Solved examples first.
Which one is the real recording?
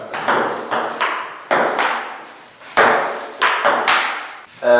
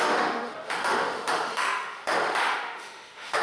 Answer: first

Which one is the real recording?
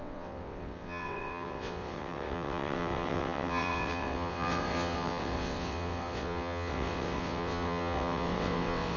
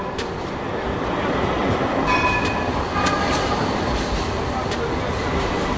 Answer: second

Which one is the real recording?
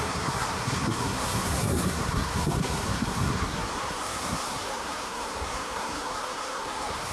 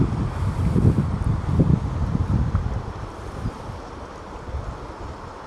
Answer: second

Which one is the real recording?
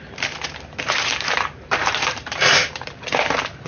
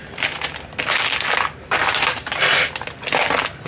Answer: second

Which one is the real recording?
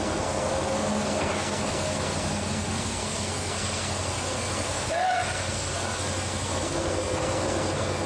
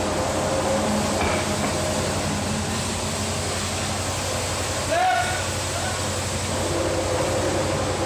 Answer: second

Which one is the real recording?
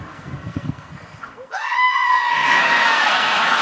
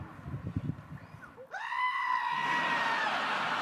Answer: second